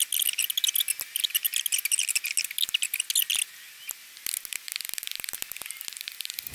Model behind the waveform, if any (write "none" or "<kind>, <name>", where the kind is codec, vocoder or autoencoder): none